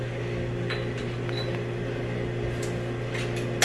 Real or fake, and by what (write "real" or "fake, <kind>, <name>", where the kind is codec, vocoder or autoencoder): real